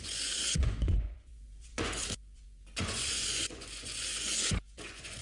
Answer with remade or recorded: remade